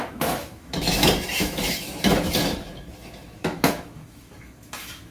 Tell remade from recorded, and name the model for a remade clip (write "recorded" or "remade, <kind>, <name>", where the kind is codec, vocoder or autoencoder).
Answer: remade, autoencoder, DAC-VAE